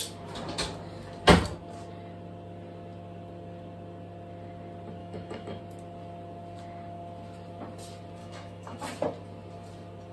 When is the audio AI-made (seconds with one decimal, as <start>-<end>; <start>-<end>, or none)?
5.0-5.6; 8.2-8.8